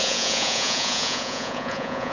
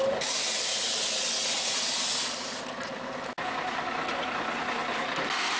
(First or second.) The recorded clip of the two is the second